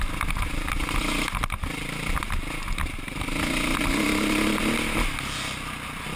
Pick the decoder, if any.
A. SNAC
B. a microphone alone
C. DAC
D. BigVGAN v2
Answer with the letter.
B